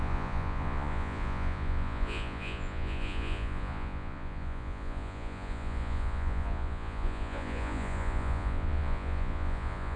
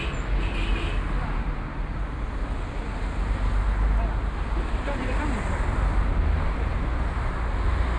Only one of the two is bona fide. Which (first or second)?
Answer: second